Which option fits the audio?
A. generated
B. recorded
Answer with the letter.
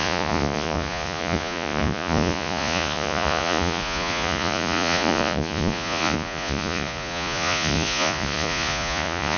A